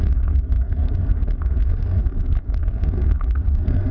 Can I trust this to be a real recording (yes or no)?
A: no